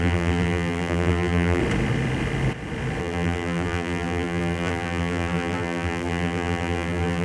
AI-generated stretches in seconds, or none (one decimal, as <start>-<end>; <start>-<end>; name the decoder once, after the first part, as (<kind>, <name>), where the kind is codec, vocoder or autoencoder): 0.0-1.6 (vocoder, BigVGAN v2); 3.0-7.2